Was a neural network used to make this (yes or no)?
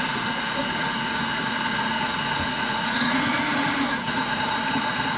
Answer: yes